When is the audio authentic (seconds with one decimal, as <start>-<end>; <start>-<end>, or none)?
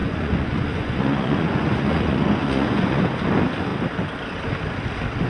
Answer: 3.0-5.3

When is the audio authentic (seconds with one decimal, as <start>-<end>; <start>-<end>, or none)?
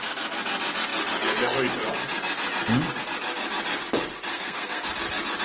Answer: 0.0-4.3; 4.9-5.4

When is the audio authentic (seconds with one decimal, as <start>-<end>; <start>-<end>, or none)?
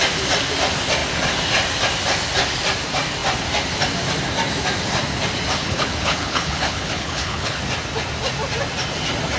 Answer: 0.0-5.6; 7.6-9.4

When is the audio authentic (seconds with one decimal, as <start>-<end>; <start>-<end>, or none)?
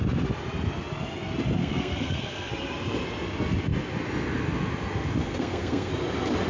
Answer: 0.0-1.6; 2.5-5.2; 5.9-6.5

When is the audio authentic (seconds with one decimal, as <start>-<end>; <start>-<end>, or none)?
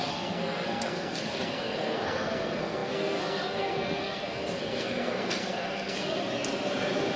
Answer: 6.3-7.2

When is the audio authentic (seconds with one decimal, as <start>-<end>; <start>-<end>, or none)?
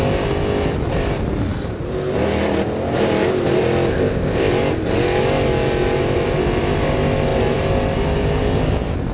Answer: 0.0-3.9; 4.5-9.1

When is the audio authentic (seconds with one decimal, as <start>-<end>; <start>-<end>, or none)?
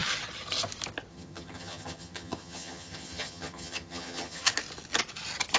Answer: 0.0-1.1; 4.5-5.6